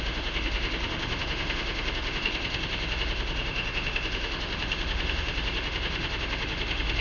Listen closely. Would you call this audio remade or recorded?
remade